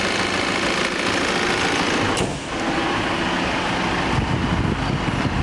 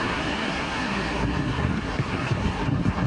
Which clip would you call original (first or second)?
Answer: first